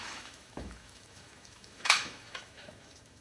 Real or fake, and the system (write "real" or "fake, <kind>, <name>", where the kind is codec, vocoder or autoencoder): fake, autoencoder, DAC-VAE